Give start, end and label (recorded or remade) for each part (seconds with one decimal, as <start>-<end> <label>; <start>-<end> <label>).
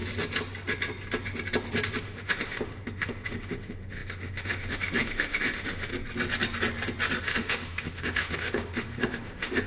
0.0-2.0 recorded; 2.0-5.9 remade; 5.9-7.2 recorded; 7.2-9.7 remade